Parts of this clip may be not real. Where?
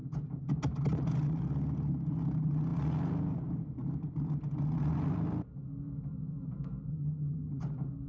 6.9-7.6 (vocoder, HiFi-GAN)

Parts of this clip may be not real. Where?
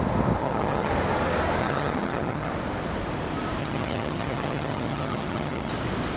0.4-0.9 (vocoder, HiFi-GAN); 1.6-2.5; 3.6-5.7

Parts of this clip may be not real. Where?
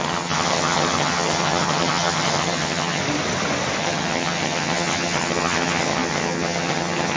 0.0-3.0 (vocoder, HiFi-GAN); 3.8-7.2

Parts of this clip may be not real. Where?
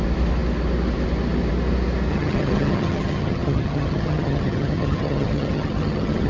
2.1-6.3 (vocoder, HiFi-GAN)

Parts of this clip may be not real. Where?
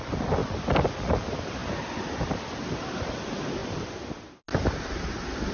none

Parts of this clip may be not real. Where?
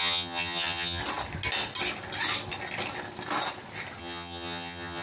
0.0-1.0 (vocoder, HiFi-GAN); 4.0-5.0